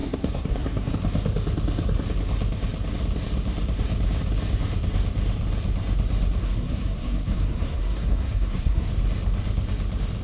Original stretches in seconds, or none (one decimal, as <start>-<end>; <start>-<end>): 0.9-6.4; 8.9-10.2